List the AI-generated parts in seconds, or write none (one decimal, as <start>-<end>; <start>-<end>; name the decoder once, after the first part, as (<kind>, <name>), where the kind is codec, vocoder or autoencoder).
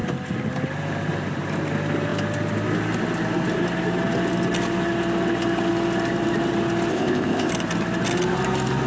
6.9-7.5 (codec, ZipCodec)